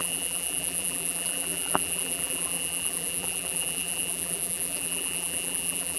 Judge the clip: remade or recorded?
remade